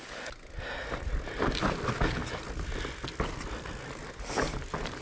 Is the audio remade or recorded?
recorded